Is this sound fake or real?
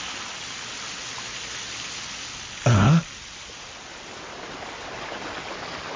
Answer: real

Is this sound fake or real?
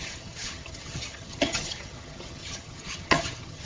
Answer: fake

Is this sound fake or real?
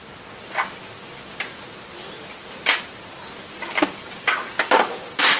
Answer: real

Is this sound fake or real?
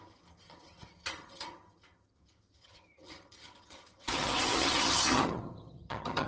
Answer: fake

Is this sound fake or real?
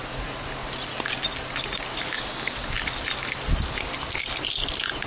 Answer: real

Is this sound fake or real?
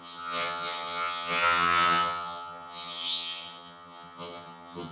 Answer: fake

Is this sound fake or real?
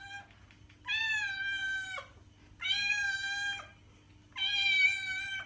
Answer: real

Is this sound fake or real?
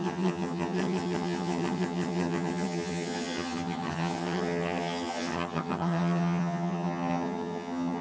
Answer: fake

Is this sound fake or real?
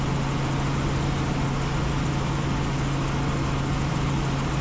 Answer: real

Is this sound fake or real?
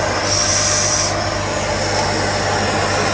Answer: real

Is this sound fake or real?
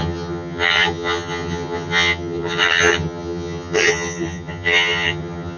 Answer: fake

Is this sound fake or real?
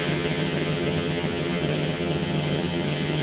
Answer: fake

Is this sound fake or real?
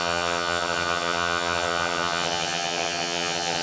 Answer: fake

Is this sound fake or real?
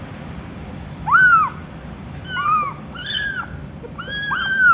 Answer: real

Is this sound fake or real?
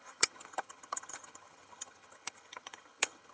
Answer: fake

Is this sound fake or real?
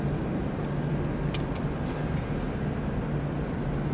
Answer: real